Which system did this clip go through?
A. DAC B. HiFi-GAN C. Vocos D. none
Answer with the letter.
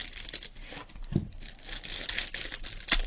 D